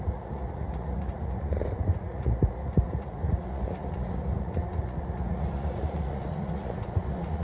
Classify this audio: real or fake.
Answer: fake